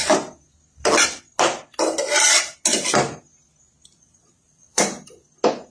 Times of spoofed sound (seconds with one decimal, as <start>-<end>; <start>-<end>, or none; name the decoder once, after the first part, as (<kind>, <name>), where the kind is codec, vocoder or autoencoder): 3.9-4.8 (vocoder, Vocos)